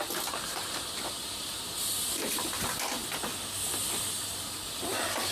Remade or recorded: recorded